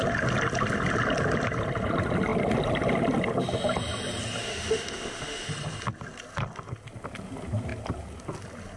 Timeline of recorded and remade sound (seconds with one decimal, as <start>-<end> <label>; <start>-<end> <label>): 0.0-4.4 recorded; 4.4-5.5 remade; 5.5-8.8 recorded